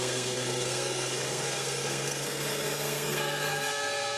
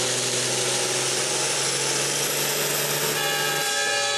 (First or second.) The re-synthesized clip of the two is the first